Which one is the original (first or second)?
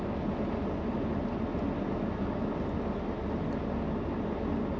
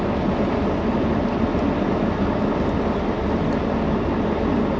first